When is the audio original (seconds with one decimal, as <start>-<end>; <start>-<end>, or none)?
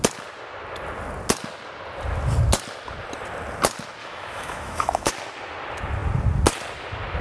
0.0-4.0; 5.1-7.2